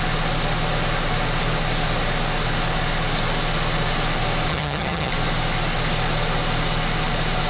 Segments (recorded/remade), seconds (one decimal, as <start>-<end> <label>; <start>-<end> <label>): 0.0-4.5 recorded; 4.5-5.1 remade; 5.1-7.5 recorded